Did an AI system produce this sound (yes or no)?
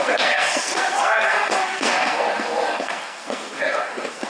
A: yes